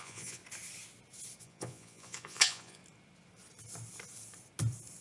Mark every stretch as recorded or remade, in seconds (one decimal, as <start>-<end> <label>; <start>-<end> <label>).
0.0-0.4 remade; 0.4-1.4 recorded; 1.4-2.8 remade; 2.8-5.0 recorded